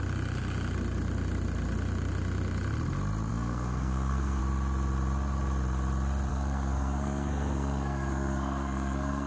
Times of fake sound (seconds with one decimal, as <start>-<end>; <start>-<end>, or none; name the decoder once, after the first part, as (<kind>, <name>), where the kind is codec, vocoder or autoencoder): 3.3-4.4 (codec, SNAC); 6.3-9.3